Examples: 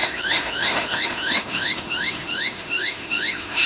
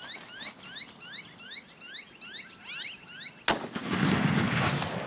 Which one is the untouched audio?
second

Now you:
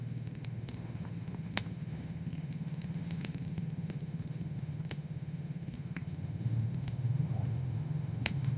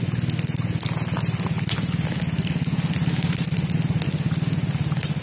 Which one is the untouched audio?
second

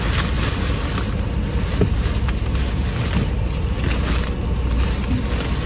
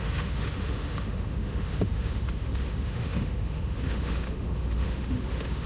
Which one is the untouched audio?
first